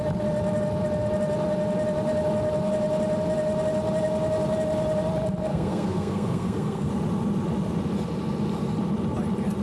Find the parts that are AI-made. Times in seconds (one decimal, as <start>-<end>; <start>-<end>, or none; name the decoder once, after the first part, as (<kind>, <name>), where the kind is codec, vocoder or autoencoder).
5.5-6.9 (codec, SNAC)